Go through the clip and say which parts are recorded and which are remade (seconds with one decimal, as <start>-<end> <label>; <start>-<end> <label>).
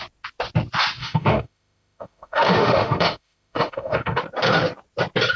0.0-1.0 recorded; 1.0-4.2 remade; 4.2-5.4 recorded